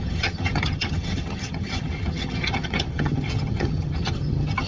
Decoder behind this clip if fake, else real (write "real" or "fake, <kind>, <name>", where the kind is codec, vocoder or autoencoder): fake, vocoder, HiFi-GAN